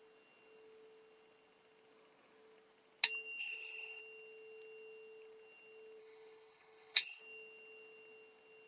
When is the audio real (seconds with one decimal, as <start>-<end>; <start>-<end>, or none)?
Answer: 0.0-3.4; 4.0-6.0; 7.2-8.7